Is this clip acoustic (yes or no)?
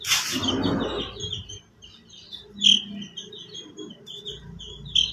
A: yes